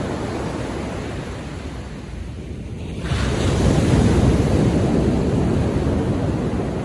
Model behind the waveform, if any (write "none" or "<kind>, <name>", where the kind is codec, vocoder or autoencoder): none